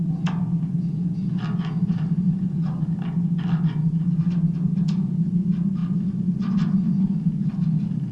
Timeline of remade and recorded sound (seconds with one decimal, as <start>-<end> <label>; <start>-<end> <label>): 0.0-8.1 recorded